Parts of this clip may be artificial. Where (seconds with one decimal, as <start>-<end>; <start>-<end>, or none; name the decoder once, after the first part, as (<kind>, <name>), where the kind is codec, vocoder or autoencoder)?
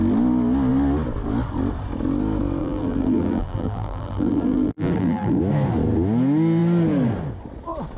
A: 2.6-5.4 (vocoder, BigVGAN v2)